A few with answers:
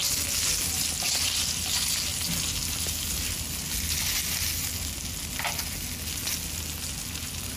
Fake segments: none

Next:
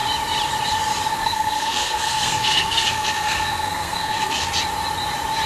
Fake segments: 1.2-4.5 (codec, SNAC)